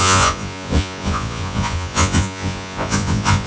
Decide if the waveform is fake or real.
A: fake